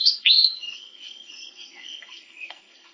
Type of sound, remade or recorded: remade